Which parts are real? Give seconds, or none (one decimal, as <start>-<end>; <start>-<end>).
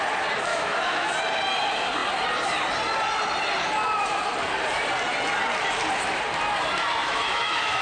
0.0-0.5; 1.1-7.0